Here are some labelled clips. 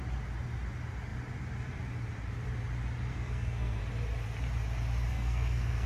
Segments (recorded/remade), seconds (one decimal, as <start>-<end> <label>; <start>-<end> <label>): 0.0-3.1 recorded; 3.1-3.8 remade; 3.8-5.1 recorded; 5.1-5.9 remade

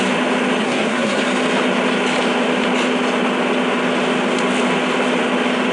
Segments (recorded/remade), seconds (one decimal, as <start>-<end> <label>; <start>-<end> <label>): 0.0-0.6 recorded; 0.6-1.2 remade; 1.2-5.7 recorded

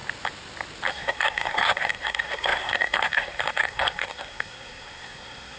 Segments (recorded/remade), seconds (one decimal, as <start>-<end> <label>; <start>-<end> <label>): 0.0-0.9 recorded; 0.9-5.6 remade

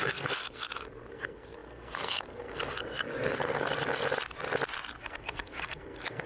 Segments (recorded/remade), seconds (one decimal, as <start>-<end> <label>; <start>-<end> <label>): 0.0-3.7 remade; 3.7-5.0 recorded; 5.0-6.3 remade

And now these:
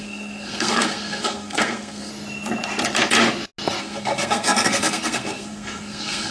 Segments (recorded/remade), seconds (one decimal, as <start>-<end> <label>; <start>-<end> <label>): 0.0-2.1 remade; 2.1-3.8 recorded; 3.8-6.3 remade

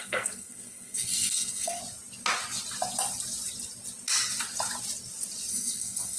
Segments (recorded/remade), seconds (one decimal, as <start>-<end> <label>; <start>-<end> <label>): 0.0-1.8 remade; 1.8-5.5 recorded; 5.5-6.2 remade

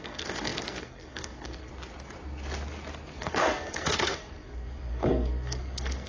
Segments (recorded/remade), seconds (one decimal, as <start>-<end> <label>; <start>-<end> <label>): 0.0-1.7 remade; 1.7-3.2 recorded; 3.2-6.1 remade

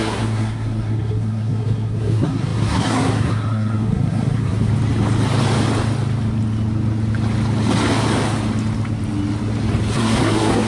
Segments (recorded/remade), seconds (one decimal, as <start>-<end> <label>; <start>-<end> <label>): 0.0-4.7 remade; 4.7-9.9 recorded; 9.9-10.7 remade